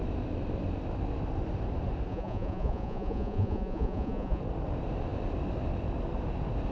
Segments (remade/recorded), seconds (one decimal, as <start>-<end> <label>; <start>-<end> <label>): 0.0-2.1 recorded; 2.1-4.4 remade; 4.4-6.7 recorded